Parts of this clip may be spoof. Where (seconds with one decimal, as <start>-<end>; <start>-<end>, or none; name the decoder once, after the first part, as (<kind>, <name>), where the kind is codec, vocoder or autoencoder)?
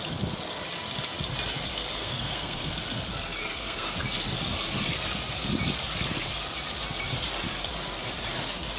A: 2.0-2.7 (codec, SNAC); 3.4-3.9